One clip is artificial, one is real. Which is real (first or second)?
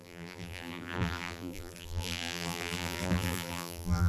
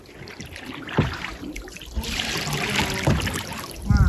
second